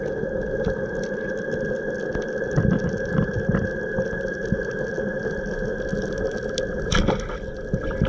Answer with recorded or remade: recorded